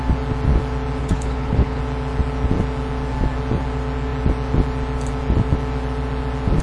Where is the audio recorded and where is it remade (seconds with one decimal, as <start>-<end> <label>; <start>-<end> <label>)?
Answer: 0.0-1.0 recorded; 1.0-1.8 remade; 1.8-6.6 recorded